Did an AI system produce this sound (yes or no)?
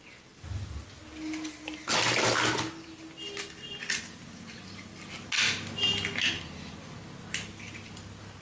no